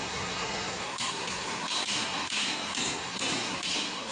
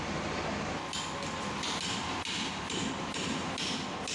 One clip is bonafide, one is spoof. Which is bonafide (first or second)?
second